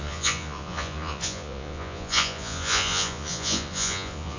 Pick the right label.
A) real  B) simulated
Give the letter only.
B